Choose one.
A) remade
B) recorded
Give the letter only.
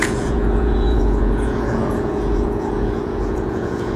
A